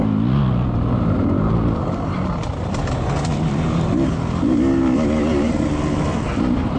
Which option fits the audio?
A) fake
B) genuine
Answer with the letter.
B